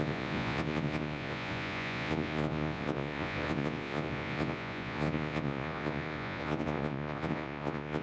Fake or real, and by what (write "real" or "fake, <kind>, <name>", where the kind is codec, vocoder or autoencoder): fake, vocoder, Vocos